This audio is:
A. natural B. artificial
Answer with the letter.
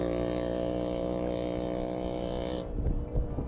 A